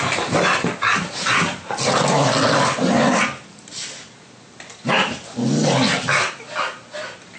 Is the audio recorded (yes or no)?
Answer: yes